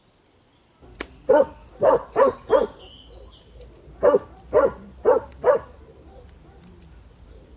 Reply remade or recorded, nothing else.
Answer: recorded